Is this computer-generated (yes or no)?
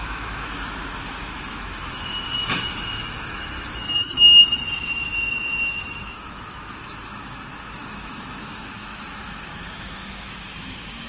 yes